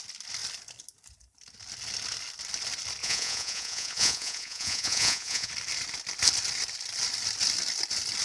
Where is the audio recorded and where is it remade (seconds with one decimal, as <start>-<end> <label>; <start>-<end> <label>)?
0.0-3.0 recorded; 3.0-5.5 remade; 5.5-8.2 recorded